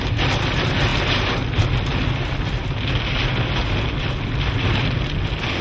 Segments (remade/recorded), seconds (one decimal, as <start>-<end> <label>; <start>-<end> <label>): 0.0-5.6 recorded